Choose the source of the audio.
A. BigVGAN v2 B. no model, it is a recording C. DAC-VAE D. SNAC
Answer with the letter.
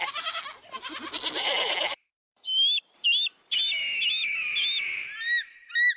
B